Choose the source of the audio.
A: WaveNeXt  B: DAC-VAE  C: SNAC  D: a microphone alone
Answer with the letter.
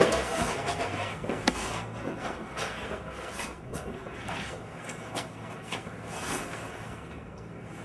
C